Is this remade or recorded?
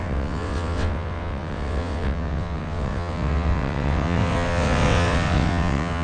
remade